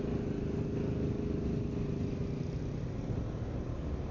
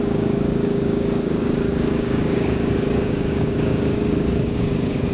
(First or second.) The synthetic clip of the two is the second